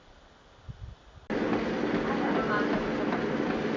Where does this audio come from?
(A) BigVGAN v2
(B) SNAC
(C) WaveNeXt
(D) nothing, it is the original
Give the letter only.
D